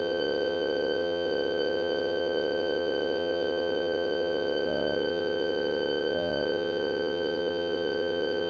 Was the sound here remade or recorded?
remade